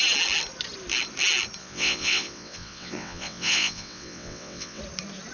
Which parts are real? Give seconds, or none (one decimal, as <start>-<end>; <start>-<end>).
0.0-1.6; 4.8-5.3